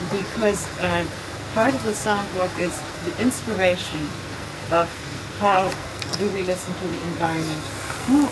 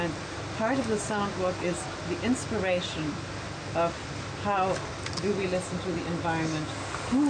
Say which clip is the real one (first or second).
second